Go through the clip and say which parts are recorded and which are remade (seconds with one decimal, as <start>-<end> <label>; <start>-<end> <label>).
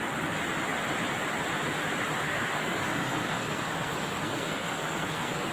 0.0-2.2 recorded; 2.2-5.5 remade